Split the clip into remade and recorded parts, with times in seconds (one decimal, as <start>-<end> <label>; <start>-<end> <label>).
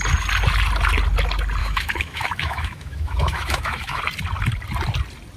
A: 0.0-1.6 recorded; 1.6-4.0 remade; 4.0-5.4 recorded